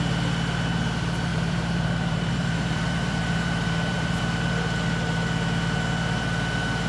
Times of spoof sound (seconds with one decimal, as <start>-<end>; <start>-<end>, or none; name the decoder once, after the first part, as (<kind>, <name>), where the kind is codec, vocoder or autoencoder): 1.3-4.2 (vocoder, BigVGAN v2)